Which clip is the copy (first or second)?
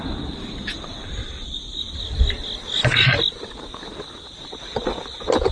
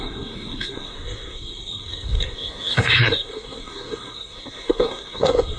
second